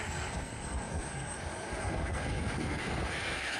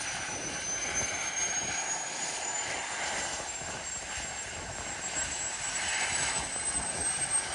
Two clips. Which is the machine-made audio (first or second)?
first